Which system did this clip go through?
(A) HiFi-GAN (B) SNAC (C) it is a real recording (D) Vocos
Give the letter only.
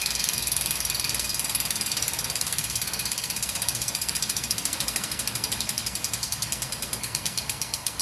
B